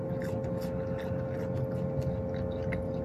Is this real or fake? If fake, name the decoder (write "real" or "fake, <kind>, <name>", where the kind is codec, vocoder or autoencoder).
real